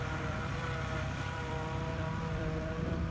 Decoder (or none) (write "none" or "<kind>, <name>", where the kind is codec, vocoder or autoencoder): vocoder, BigVGAN v2